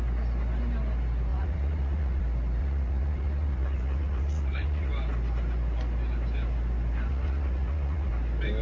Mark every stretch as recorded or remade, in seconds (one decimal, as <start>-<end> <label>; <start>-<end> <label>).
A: 0.0-1.3 recorded; 1.3-2.2 remade; 2.2-2.6 recorded; 2.6-4.9 remade; 4.9-7.1 recorded; 7.1-8.1 remade; 8.1-8.6 recorded